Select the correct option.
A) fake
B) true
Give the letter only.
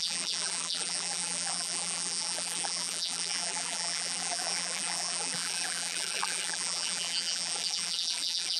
A